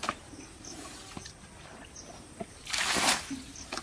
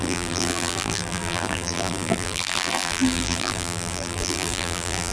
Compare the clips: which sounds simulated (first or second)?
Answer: second